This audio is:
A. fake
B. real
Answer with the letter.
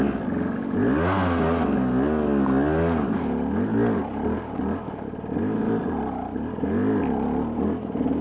B